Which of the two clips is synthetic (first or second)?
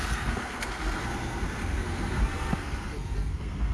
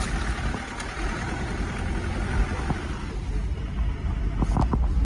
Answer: first